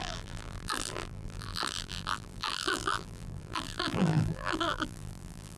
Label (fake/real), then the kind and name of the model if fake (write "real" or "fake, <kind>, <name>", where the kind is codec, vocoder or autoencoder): fake, vocoder, BigVGAN v2